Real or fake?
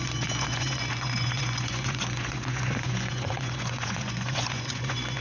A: fake